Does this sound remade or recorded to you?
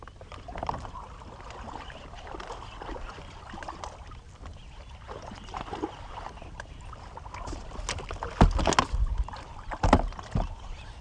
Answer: recorded